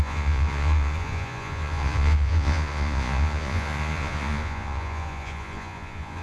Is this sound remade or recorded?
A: remade